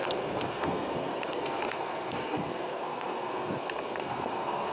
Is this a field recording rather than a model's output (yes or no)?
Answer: no